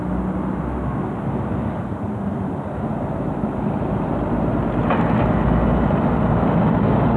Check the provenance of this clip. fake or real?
real